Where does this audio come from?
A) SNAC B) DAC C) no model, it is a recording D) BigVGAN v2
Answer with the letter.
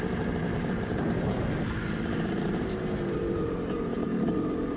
D